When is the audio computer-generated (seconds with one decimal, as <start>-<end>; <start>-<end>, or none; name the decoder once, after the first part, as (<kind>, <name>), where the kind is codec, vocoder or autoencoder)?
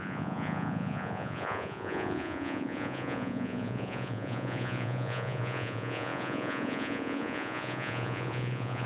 0.0-8.9 (vocoder, Vocos)